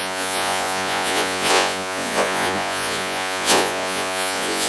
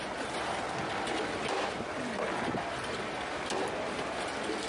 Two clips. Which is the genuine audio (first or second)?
second